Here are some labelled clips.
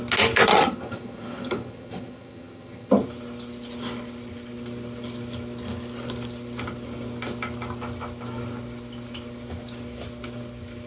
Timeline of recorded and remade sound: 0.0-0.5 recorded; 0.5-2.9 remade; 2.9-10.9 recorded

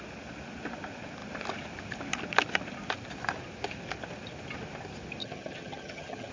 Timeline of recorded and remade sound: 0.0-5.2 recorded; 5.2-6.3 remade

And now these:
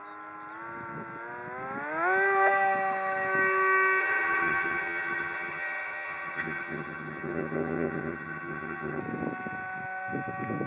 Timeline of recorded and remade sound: 0.0-4.0 recorded; 4.0-9.0 remade; 9.0-10.7 recorded

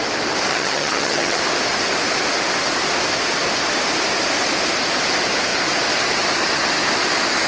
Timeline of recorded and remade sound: 0.0-0.5 recorded; 0.5-1.4 remade; 1.4-7.5 recorded

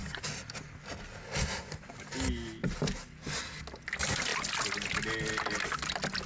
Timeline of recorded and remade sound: 0.0-6.3 recorded